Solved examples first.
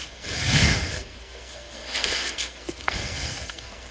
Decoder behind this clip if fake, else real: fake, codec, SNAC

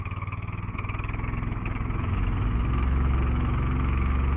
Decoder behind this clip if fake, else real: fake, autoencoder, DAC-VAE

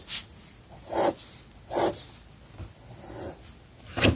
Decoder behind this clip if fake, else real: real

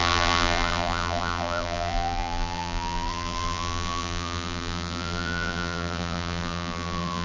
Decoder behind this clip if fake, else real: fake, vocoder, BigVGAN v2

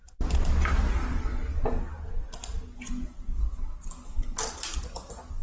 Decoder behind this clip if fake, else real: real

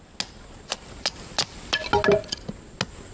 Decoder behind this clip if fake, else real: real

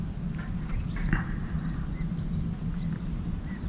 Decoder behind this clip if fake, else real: real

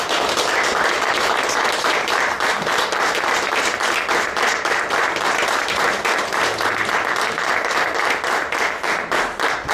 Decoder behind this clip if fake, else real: fake, vocoder, BigVGAN v2